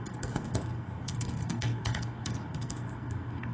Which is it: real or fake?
fake